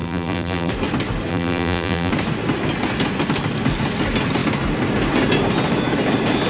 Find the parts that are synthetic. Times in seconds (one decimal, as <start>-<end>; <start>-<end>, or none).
0.0-0.7; 1.3-2.1